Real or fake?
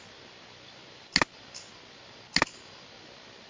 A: real